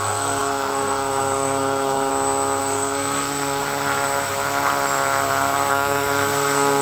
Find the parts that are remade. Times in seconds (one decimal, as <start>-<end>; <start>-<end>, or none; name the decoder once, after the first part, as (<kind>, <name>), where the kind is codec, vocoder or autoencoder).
0.0-2.1 (codec, SNAC); 2.6-3.6; 5.7-6.8